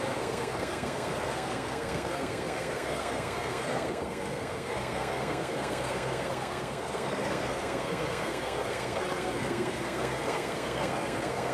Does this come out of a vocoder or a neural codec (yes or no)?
yes